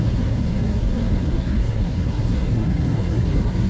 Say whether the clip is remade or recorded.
remade